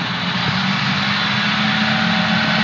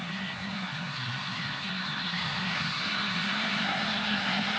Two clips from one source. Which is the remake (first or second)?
second